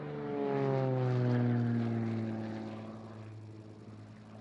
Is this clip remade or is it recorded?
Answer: recorded